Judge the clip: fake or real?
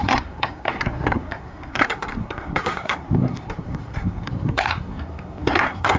fake